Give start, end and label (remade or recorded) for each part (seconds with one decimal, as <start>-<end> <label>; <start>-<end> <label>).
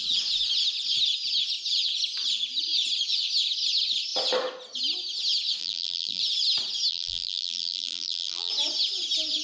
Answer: 0.0-5.6 recorded; 5.6-6.2 remade; 6.2-6.9 recorded; 6.9-8.5 remade; 8.5-9.4 recorded